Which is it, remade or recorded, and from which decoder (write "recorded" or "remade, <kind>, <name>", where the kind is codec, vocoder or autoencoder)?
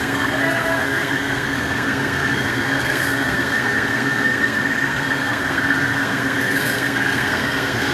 remade, codec, SNAC